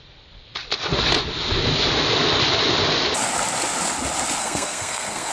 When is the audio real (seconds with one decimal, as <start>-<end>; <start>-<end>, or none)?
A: 0.0-4.4